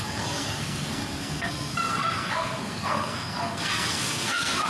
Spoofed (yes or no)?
yes